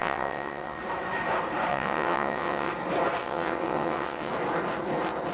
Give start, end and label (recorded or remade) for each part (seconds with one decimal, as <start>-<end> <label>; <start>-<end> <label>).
0.0-0.8 remade; 0.8-1.7 recorded; 1.7-2.7 remade; 2.7-3.2 recorded; 3.2-4.3 remade; 4.3-5.3 recorded